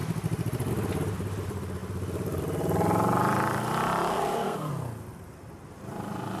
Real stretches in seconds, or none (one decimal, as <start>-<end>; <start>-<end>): 0.0-4.1; 4.7-6.4